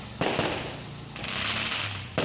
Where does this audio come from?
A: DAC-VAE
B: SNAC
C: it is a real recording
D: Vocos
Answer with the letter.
C